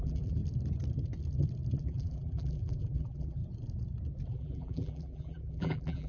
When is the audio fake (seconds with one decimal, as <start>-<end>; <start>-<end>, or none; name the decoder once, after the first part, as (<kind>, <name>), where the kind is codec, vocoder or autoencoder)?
0.0-0.4 (vocoder, BigVGAN v2); 1.8-3.4; 4.3-6.1